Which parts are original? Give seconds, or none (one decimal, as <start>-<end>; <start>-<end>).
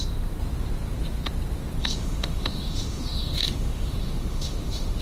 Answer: 0.0-1.8